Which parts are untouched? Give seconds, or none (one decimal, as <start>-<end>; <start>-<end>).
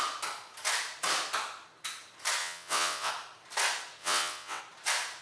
0.0-2.4; 3.1-4.0; 4.6-5.2